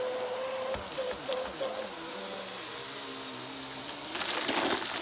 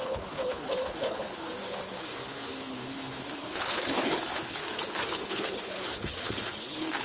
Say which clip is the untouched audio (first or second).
first